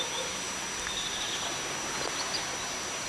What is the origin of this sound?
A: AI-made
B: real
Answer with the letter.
B